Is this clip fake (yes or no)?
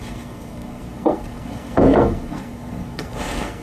yes